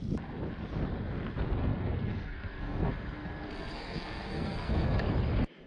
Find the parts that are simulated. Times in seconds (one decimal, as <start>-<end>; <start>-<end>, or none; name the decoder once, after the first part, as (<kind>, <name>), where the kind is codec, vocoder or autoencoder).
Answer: 1.6-5.0 (codec, SNAC)